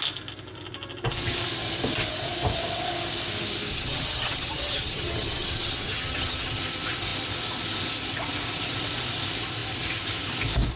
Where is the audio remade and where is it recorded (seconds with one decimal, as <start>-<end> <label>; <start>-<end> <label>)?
0.0-3.7 recorded; 3.7-6.6 remade; 6.6-10.8 recorded